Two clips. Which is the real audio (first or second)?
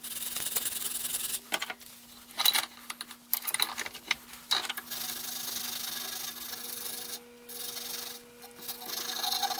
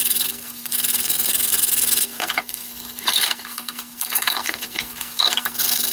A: first